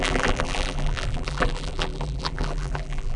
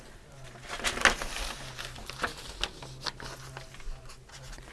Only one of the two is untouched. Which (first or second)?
second